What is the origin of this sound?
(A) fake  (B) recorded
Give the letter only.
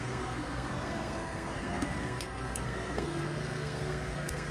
A